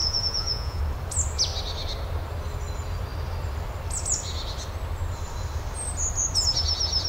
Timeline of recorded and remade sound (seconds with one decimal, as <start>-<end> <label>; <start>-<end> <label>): 0.0-0.8 remade; 0.8-7.1 recorded